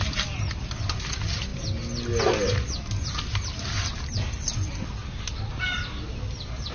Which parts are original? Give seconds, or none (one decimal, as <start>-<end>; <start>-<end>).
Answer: 0.0-6.7